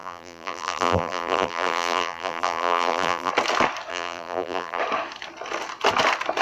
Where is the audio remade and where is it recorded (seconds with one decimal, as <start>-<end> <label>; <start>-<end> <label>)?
0.0-3.3 remade; 3.3-3.9 recorded; 3.9-4.8 remade; 4.8-6.4 recorded